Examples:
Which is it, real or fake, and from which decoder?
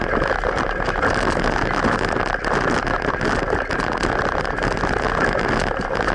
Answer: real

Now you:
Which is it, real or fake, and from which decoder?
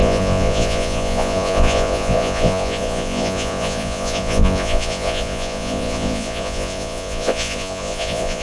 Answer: fake, vocoder, Vocos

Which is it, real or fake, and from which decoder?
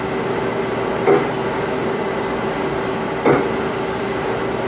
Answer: real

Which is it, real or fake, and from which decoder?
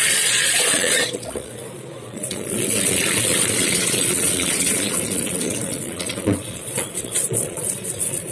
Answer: fake, vocoder, Vocos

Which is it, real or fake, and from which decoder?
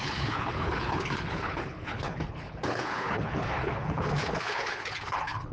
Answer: fake, codec, HILCodec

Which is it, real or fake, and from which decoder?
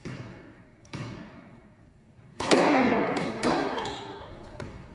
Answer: fake, codec, SNAC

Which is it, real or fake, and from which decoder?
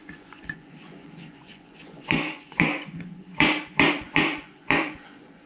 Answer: fake, vocoder, Vocos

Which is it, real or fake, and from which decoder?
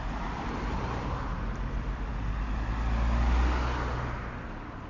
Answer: real